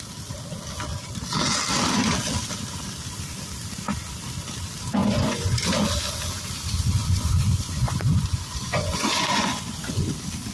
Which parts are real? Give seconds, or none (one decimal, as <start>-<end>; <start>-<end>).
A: 0.0-5.0; 5.6-7.0; 10.1-10.5